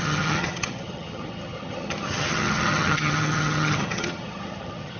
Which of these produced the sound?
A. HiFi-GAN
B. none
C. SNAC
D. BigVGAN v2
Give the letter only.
A